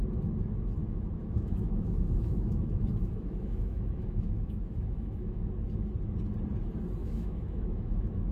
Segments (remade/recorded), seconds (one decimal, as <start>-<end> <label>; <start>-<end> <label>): 0.0-0.8 recorded; 0.8-5.5 remade; 5.5-7.0 recorded; 7.0-8.3 remade